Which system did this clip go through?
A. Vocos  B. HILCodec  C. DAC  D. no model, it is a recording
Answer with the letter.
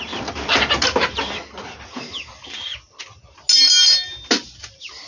D